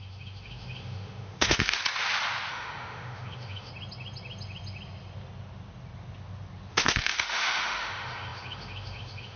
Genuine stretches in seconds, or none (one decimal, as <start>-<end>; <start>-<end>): 1.8-2.5; 3.7-6.7